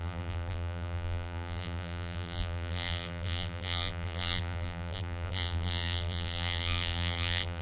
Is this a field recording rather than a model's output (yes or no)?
no